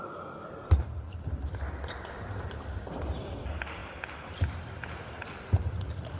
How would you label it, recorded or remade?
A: recorded